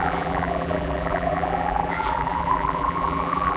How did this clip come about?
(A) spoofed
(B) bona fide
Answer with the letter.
A